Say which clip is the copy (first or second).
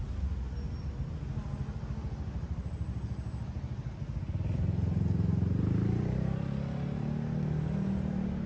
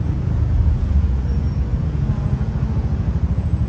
second